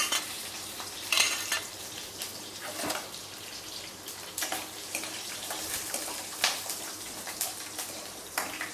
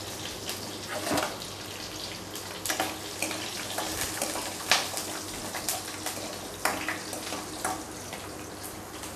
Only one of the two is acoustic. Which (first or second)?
second